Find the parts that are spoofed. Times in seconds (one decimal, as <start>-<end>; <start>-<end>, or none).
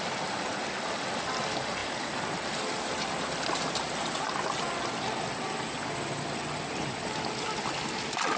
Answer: none